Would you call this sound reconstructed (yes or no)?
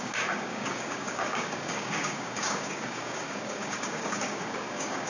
yes